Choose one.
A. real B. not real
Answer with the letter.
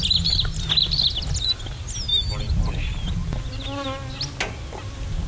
A